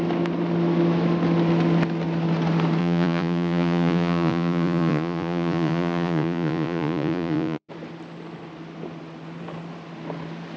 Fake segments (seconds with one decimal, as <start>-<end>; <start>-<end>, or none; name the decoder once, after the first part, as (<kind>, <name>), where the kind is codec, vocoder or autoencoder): 2.8-7.7 (vocoder, Vocos)